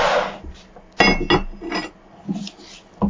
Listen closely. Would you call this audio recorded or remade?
recorded